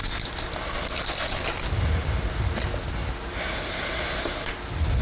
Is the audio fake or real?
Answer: real